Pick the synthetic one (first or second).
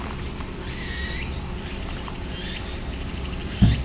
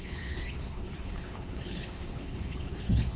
second